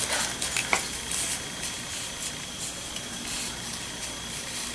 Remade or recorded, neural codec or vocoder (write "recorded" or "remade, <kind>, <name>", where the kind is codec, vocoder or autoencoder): recorded